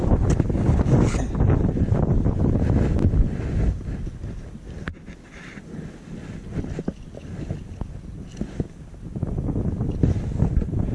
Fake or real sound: real